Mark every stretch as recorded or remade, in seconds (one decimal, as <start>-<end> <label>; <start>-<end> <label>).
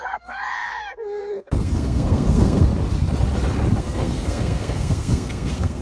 0.0-2.7 remade; 2.7-3.8 recorded; 3.8-5.8 remade